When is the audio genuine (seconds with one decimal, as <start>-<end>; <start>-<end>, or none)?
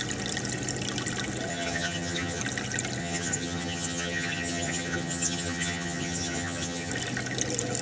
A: 0.0-1.5; 2.4-3.0; 6.9-7.8